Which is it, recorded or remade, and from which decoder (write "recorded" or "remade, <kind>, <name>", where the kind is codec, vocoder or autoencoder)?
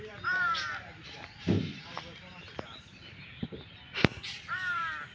remade, vocoder, BigVGAN v2